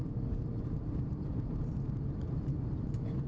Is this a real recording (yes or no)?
no